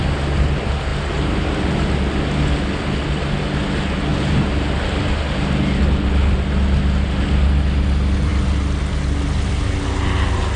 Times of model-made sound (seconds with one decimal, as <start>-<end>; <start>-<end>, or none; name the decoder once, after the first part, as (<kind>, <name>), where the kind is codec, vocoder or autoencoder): 0.9-1.7 (vocoder, BigVGAN v2); 4.1-5.8